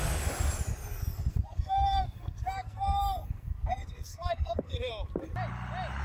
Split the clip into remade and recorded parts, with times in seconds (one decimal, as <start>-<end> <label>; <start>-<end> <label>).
0.0-1.3 recorded; 1.3-4.9 remade; 4.9-6.0 recorded